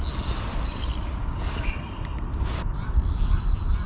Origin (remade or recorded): recorded